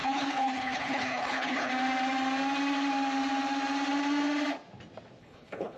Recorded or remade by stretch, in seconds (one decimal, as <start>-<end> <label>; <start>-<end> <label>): 0.0-1.7 remade; 1.7-5.2 recorded; 5.2-5.8 remade